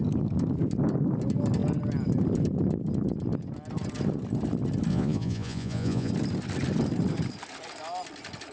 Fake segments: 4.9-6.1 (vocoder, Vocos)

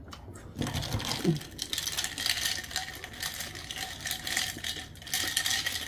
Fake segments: none

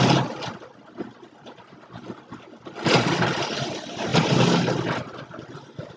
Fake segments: none

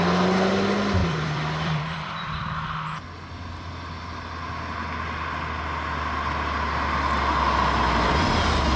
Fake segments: 1.0-2.4 (vocoder, BigVGAN v2)

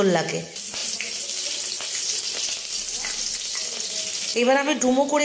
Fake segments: none

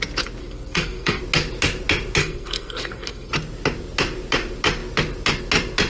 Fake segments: 0.4-1.2 (codec, SNAC); 2.2-3.3

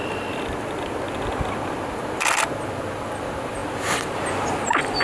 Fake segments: none